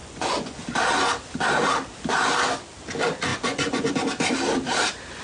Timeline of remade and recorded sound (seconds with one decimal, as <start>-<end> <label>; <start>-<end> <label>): 0.0-0.6 remade; 0.6-3.3 recorded; 3.3-3.9 remade; 3.9-5.2 recorded